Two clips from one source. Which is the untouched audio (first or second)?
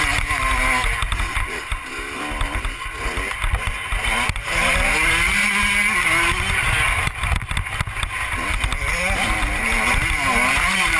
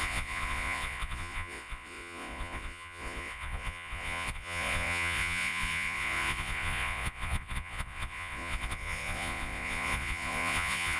first